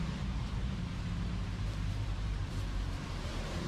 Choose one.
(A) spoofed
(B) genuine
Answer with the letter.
A